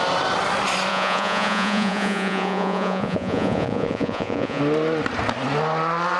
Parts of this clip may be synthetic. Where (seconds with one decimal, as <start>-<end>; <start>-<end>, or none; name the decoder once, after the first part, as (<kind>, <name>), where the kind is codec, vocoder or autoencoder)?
0.9-4.6 (vocoder, Vocos)